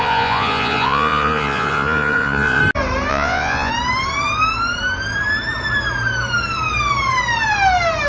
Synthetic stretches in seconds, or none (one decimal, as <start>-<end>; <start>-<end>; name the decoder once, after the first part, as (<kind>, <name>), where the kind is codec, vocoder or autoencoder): 0.0-2.6 (vocoder, Vocos); 3.1-3.7